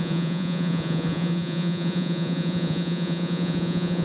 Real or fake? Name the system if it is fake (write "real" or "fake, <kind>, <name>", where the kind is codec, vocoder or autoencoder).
fake, vocoder, Vocos